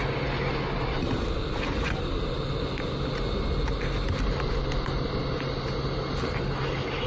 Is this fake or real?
real